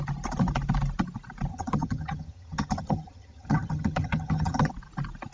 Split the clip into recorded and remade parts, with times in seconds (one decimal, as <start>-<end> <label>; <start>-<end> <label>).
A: 0.0-1.5 recorded; 1.5-4.7 remade; 4.7-5.3 recorded